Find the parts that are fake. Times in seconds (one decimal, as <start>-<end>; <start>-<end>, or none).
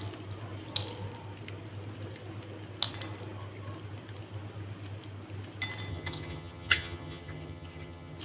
5.9-8.2